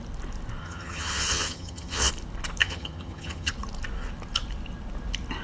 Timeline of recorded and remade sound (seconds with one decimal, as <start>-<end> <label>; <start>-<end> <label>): 0.0-0.6 recorded; 0.6-2.1 remade; 2.1-2.6 recorded; 2.6-3.5 remade; 3.5-5.4 recorded